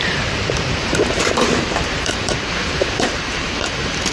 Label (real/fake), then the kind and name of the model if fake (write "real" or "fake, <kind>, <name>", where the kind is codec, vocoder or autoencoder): fake, vocoder, BigVGAN v2